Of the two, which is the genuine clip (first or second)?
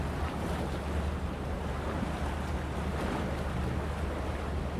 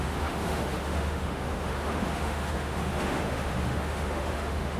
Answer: first